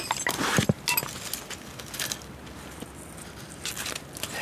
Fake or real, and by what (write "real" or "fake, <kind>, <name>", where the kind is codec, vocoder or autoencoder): real